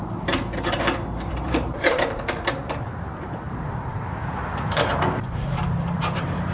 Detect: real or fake fake